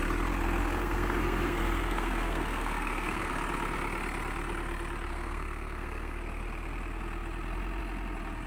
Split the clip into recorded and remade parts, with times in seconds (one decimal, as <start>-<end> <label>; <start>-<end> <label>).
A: 0.0-0.6 recorded; 0.6-3.3 remade; 3.3-5.1 recorded; 5.1-6.2 remade; 6.2-8.5 recorded